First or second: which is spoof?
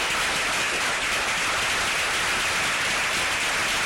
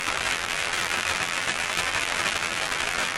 second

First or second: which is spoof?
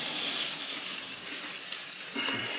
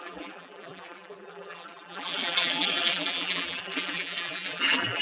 second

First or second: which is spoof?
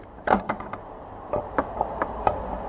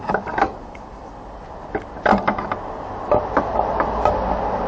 first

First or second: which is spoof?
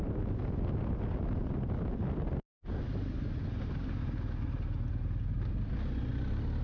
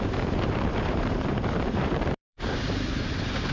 second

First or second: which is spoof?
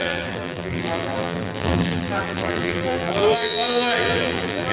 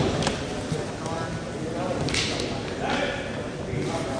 first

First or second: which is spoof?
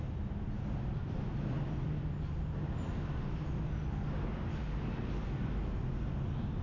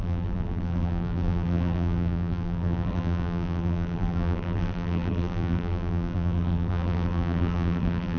second